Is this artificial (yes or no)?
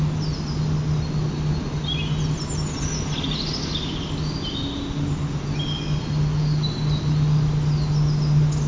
no